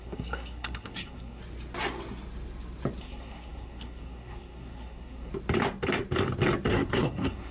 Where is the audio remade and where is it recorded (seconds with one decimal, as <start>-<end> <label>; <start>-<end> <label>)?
0.0-1.4 remade; 1.4-3.0 recorded; 3.0-5.3 remade; 5.3-6.7 recorded; 6.7-7.5 remade